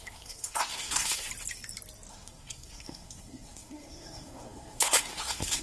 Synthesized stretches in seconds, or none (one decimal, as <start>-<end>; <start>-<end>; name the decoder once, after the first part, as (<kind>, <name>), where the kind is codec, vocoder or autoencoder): 0.0-1.3 (codec, SNAC); 2.1-5.6